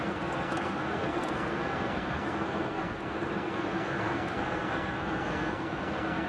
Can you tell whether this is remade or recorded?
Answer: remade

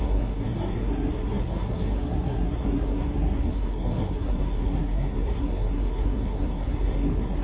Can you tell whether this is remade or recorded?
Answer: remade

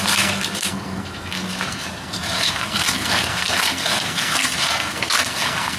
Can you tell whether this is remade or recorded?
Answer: remade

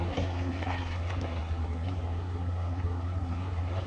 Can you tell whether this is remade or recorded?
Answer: remade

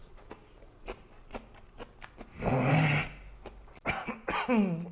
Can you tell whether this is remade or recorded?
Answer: recorded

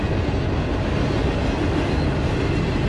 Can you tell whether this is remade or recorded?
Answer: recorded